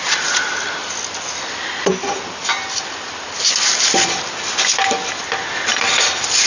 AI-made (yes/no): no